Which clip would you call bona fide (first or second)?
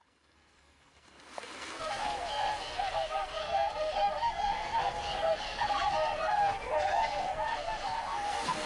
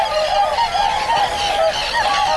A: second